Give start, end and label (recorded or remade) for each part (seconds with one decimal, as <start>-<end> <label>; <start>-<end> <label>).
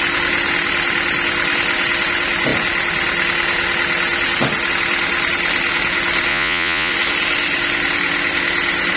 0.0-6.3 recorded; 6.3-6.9 remade; 6.9-9.0 recorded